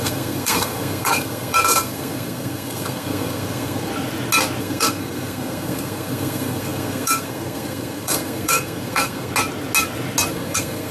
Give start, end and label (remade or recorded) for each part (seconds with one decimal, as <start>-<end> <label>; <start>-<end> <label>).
0.0-3.9 remade; 3.9-4.6 recorded; 4.6-9.3 remade; 9.3-10.3 recorded; 10.3-10.9 remade